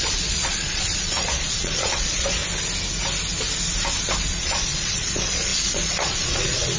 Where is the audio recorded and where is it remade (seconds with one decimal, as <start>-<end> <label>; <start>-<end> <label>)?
0.0-2.4 remade; 2.4-4.3 recorded; 4.3-6.8 remade